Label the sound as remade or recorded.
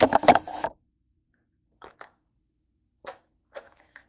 remade